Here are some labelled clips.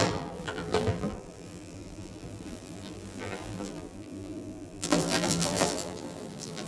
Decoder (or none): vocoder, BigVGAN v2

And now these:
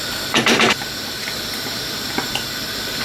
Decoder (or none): vocoder, BigVGAN v2